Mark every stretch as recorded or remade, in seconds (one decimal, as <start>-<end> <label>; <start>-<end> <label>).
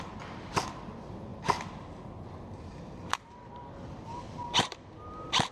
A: 0.0-5.5 recorded